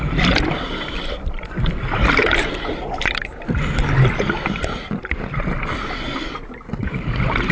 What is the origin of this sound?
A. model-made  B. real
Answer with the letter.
A